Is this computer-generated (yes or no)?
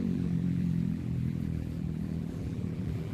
yes